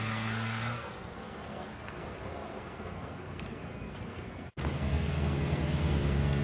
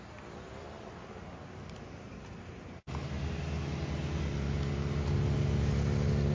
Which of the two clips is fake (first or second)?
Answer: first